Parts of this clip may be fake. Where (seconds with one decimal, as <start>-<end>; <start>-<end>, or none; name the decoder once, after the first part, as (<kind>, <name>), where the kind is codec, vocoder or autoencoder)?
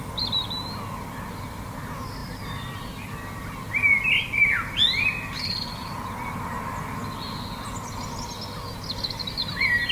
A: none